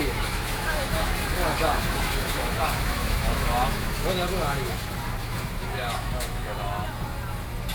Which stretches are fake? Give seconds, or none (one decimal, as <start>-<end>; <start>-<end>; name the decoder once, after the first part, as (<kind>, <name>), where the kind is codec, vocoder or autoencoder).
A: 0.0-1.1 (autoencoder, DAC-VAE); 1.5-4.8; 5.2-6.5